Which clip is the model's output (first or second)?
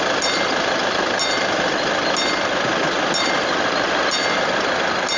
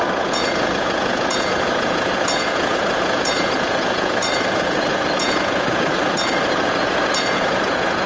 second